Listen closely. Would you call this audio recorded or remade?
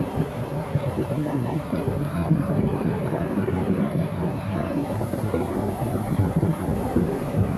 remade